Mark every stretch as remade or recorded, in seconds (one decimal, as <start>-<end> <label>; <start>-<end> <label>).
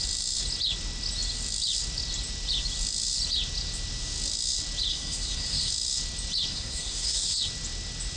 0.0-4.9 recorded; 4.9-5.7 remade; 5.7-6.5 recorded; 6.5-7.4 remade; 7.4-8.2 recorded